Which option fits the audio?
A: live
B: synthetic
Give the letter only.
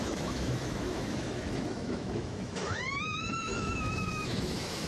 B